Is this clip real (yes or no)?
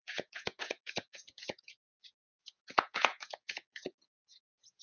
no